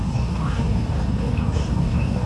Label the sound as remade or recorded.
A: remade